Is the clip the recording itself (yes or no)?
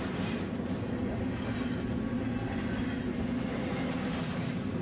yes